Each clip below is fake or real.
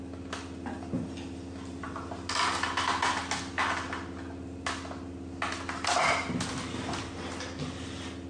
real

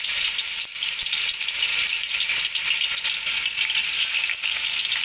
real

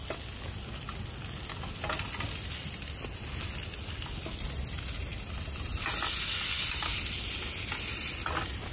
real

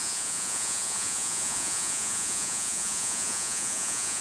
fake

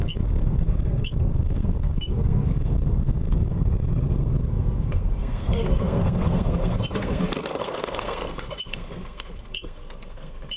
fake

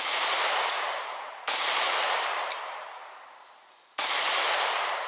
fake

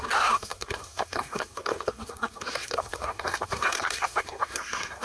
fake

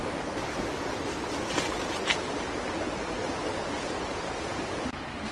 real